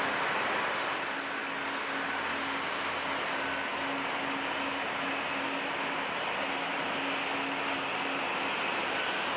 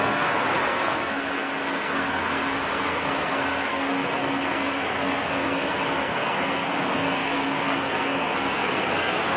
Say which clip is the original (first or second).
first